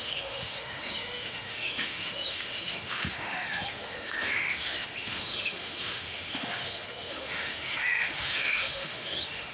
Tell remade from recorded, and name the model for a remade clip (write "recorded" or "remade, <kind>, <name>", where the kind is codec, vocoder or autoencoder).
remade, autoencoder, DAC-VAE